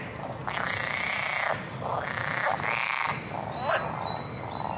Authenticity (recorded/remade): recorded